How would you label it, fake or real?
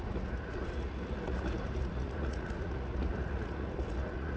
fake